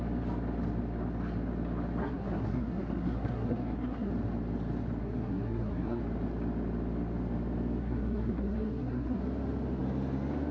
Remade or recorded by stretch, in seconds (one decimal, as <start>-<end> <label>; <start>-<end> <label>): 0.0-2.0 recorded; 2.0-4.1 remade; 4.1-5.0 recorded; 5.0-6.0 remade; 6.0-7.8 recorded; 7.8-9.2 remade; 9.2-10.5 recorded